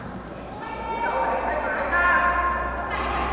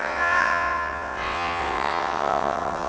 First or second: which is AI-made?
second